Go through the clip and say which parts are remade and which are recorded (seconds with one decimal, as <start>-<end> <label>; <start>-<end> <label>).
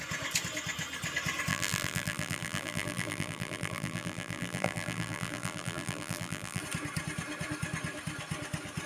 0.0-1.5 recorded; 1.5-6.6 remade; 6.6-8.9 recorded